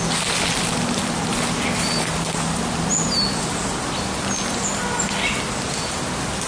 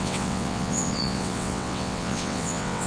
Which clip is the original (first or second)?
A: first